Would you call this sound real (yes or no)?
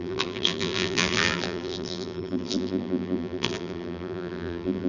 no